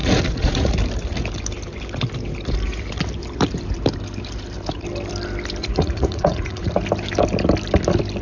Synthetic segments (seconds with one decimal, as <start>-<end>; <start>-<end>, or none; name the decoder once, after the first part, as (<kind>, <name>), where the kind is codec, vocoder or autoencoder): 0.0-0.7 (vocoder, Vocos); 5.6-6.7